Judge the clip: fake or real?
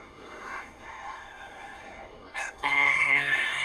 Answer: fake